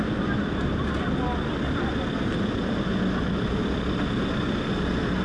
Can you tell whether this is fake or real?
real